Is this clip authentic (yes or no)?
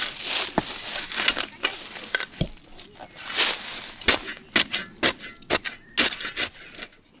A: yes